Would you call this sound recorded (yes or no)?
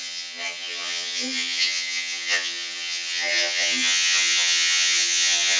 no